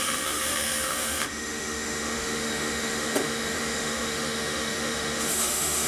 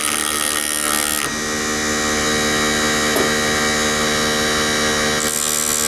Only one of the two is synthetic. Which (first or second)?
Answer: first